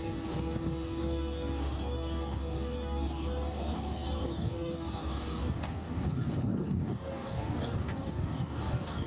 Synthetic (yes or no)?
yes